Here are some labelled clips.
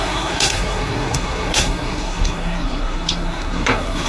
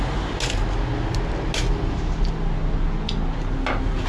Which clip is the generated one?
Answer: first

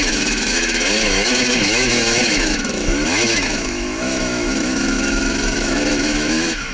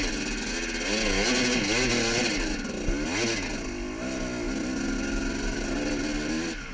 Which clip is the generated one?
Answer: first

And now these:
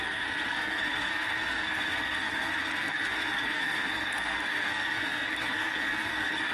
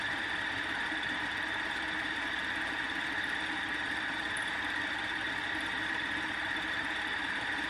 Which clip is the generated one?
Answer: first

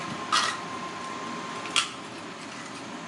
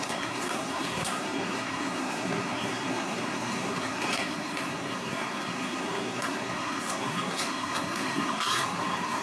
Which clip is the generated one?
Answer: second